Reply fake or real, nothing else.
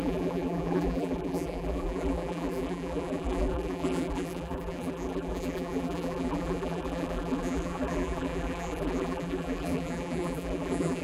fake